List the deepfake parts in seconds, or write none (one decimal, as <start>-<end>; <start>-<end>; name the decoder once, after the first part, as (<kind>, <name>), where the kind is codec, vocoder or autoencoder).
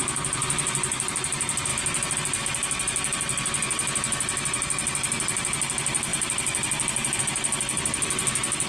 0.4-1.1 (vocoder, BigVGAN v2); 6.1-7.2